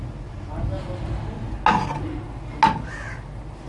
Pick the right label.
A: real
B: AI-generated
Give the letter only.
A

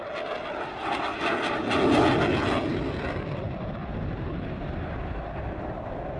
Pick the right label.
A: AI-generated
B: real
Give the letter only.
B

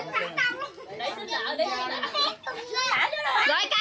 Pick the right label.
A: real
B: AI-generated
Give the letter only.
A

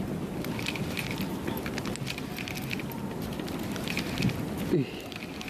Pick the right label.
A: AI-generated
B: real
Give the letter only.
B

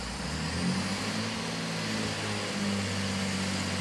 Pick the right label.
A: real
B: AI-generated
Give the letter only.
A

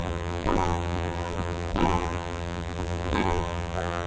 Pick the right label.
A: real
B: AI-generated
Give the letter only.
B